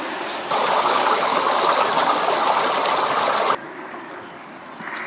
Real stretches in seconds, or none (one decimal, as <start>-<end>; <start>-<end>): 0.0-0.6; 1.9-3.6; 4.5-5.1